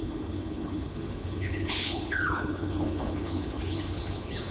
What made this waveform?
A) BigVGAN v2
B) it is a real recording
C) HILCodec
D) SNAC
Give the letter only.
C